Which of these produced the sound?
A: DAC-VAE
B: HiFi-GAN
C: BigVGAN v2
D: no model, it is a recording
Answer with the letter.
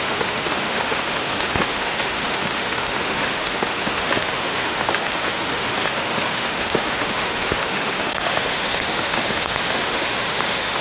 A